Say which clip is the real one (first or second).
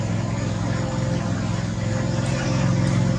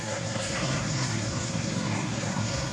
first